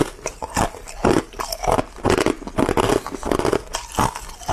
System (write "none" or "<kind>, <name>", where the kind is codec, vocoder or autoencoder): none